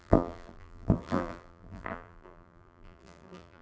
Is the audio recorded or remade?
remade